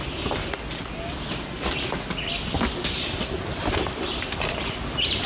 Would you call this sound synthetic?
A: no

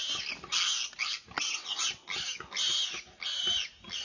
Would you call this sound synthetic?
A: no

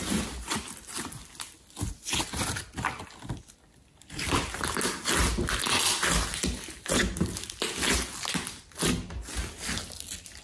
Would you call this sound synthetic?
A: no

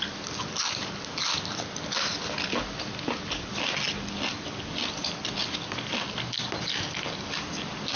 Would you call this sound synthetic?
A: no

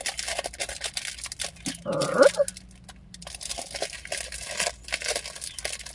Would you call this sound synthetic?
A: no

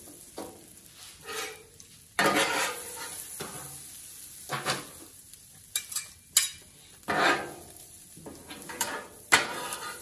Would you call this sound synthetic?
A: no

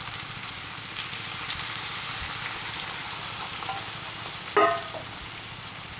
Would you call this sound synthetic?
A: no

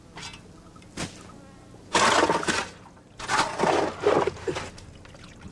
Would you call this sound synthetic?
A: no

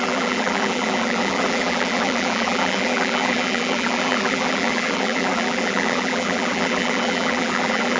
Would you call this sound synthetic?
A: yes